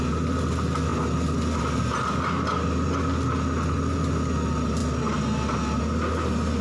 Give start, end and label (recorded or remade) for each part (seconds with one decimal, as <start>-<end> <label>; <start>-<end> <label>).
0.0-6.6 recorded